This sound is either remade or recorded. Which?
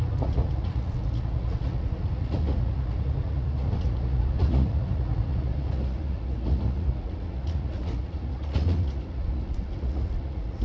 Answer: remade